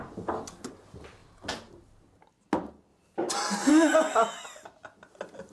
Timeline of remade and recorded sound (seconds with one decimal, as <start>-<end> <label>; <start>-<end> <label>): 0.0-1.2 recorded; 1.2-2.0 remade; 2.0-2.9 recorded; 2.9-3.7 remade; 3.7-5.5 recorded